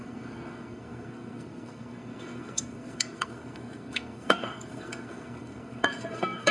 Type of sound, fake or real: fake